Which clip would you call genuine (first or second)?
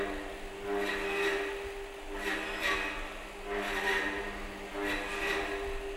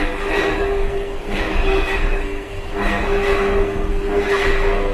first